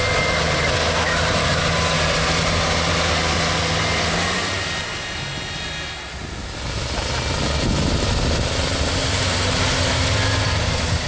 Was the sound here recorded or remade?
recorded